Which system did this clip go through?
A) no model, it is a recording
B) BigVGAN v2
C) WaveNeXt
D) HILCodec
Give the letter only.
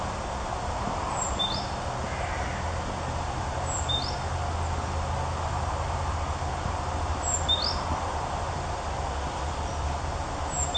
A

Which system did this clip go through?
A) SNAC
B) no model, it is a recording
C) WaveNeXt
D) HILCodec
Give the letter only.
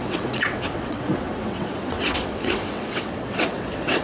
C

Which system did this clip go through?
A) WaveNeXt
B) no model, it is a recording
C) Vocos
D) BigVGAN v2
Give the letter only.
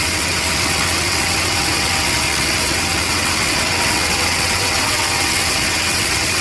A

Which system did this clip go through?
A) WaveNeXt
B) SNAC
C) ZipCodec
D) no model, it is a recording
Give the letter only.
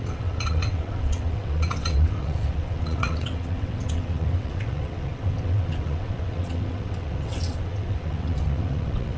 A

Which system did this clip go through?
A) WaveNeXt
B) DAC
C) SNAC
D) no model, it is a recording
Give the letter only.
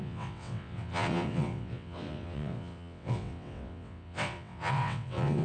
A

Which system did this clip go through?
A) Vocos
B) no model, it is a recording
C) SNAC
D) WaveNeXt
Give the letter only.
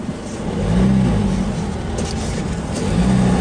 B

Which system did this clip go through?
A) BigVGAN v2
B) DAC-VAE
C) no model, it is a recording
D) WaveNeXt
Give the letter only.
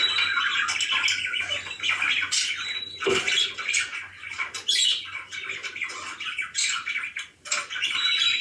C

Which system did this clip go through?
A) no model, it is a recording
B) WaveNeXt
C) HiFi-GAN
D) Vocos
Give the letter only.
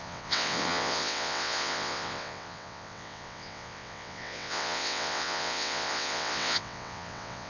B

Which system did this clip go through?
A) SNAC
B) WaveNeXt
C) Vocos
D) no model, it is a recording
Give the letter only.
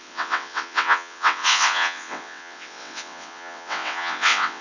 B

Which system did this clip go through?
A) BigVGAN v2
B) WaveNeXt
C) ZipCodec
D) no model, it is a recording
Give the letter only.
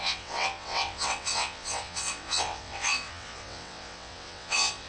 B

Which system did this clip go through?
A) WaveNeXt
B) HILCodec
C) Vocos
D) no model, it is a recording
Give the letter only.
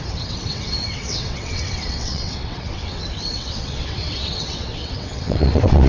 A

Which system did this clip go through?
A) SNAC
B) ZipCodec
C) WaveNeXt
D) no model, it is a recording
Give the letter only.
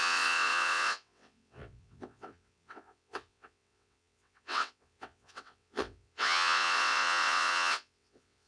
C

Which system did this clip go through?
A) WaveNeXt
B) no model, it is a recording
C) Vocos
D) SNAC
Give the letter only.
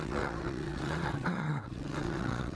A